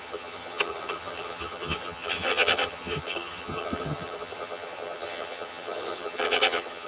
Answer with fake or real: fake